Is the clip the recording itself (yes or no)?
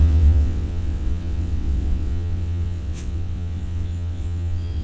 no